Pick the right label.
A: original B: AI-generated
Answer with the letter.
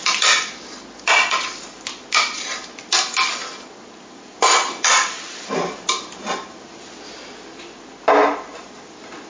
A